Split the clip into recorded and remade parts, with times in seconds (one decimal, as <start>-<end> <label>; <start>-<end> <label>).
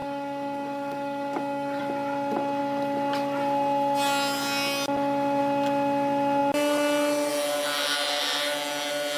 0.0-1.8 remade; 1.8-9.2 recorded